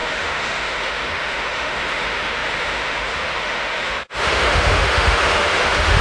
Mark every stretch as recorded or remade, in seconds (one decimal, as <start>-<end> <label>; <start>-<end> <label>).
0.0-6.0 remade